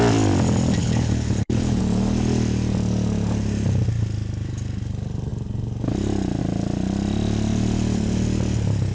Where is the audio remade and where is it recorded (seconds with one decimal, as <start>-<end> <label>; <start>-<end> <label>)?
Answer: 0.0-0.8 recorded; 0.8-1.8 remade; 1.8-8.9 recorded